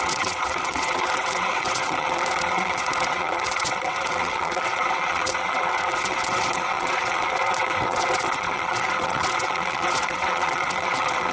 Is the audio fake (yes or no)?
yes